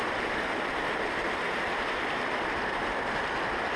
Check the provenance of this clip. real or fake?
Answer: real